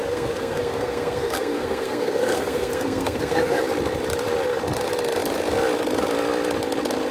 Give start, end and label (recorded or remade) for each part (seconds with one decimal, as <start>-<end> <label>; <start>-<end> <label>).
0.0-3.6 remade; 3.6-7.1 recorded